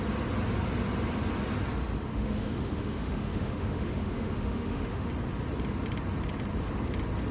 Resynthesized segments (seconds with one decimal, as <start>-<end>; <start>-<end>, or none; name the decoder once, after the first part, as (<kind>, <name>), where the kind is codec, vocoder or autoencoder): 2.1-5.1 (autoencoder, DAC-VAE)